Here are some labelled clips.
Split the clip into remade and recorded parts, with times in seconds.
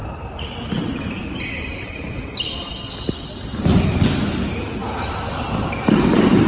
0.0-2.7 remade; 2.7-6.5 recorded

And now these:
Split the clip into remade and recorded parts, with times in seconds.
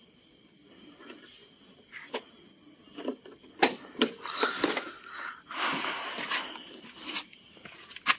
0.0-8.2 recorded